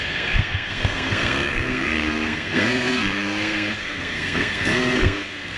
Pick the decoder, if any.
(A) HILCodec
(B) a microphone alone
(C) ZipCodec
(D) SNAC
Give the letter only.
D